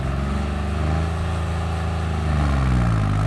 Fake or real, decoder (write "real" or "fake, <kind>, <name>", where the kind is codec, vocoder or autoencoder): real